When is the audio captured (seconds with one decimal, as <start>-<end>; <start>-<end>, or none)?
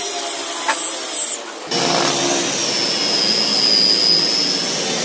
0.0-5.0